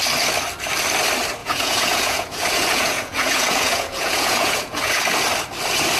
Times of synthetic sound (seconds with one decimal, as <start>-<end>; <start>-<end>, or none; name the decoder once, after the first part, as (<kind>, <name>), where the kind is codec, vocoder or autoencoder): 1.4-5.0 (vocoder, Vocos)